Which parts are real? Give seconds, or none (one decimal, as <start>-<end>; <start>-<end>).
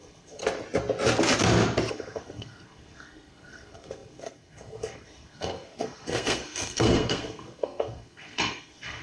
0.4-1.9